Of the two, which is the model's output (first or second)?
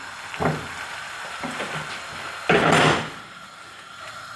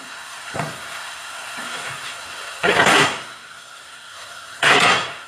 second